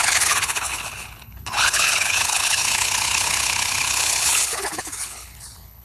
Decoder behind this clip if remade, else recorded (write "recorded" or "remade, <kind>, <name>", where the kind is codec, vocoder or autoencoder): remade, codec, HILCodec